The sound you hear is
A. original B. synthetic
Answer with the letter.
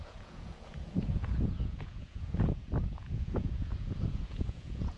B